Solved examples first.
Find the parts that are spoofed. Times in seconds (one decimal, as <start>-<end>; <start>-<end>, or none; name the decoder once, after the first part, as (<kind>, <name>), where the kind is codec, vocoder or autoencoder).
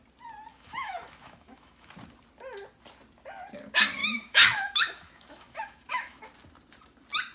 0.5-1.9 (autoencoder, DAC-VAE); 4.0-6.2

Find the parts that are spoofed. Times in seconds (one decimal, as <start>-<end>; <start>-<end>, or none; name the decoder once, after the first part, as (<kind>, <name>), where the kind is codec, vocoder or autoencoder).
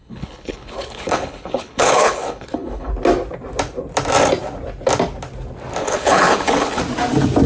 0.0-2.9 (codec, HILCodec); 5.8-6.8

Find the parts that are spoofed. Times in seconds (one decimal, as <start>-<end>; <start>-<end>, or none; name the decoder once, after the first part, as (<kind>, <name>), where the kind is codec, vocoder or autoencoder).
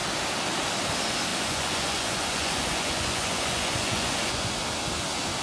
1.3-4.5 (vocoder, Vocos)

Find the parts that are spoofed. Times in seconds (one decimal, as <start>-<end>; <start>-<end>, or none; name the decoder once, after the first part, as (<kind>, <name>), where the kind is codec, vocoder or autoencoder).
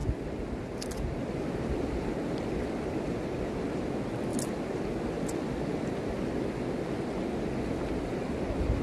none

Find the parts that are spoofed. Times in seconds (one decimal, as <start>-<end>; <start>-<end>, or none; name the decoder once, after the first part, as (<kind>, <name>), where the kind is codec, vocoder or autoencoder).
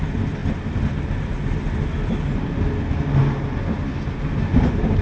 none